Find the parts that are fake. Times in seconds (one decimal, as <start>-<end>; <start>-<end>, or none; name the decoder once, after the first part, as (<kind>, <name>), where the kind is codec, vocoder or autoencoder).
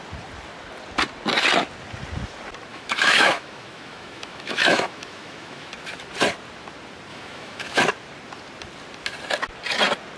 2.7-5.7 (autoencoder, DAC-VAE); 7.1-7.8